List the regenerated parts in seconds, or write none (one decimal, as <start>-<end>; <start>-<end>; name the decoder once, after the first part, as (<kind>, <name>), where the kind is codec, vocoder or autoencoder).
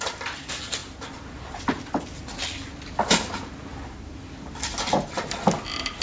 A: none